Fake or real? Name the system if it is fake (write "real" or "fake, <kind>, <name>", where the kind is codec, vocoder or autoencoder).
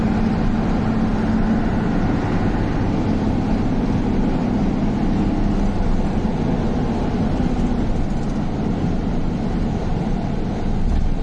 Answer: real